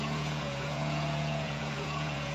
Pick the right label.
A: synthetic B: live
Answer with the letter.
A